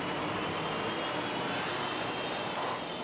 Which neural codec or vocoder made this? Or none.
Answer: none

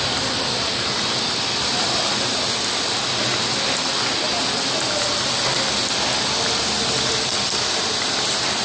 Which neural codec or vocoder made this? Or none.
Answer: none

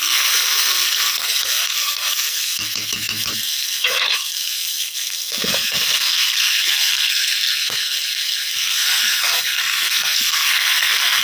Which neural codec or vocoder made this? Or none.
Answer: codec, SNAC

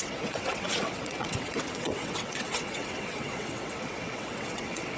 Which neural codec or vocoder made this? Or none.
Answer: vocoder, WaveNeXt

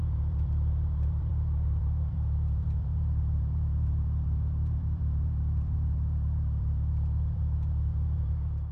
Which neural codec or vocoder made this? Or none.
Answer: vocoder, BigVGAN v2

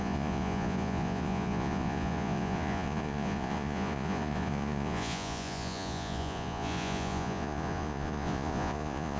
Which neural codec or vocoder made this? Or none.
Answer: vocoder, Vocos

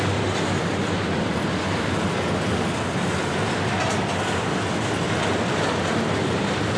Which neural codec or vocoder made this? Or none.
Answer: none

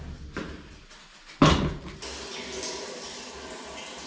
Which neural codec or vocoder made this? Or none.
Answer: none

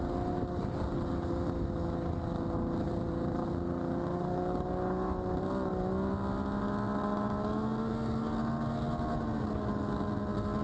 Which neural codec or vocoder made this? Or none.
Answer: none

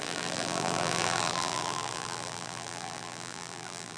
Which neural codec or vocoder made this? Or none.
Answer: vocoder, BigVGAN v2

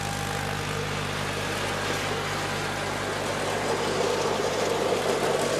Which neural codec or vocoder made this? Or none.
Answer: none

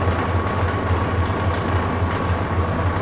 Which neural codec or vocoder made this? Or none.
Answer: none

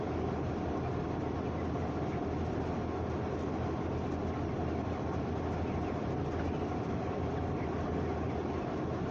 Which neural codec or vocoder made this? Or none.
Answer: none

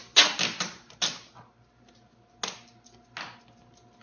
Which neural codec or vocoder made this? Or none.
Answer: none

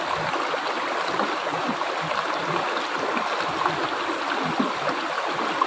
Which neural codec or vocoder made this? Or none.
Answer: none